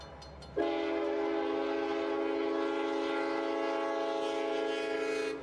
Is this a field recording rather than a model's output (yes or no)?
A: yes